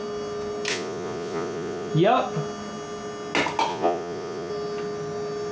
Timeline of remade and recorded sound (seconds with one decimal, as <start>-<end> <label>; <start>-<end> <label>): 0.0-0.7 recorded; 0.7-1.9 remade; 1.9-3.7 recorded; 3.7-4.5 remade; 4.5-5.5 recorded